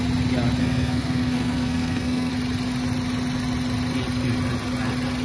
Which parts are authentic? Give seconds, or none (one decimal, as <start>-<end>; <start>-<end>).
0.0-0.6; 2.3-5.2